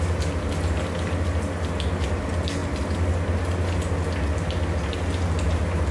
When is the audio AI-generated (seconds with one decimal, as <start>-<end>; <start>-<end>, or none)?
none